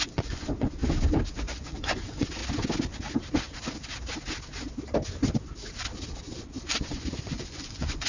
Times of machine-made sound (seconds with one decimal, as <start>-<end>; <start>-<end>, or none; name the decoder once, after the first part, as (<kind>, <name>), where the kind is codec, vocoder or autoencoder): 0.0-0.8 (vocoder, Vocos); 1.3-2.4; 6.7-8.1